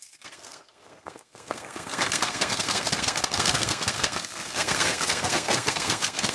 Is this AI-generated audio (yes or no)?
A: yes